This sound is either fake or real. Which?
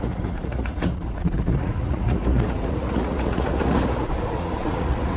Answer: fake